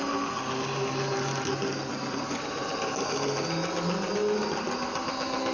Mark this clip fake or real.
real